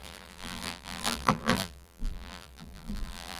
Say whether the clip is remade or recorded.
remade